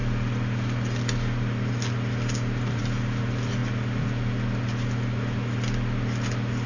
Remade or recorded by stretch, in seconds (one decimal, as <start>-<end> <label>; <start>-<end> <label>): 0.0-6.7 recorded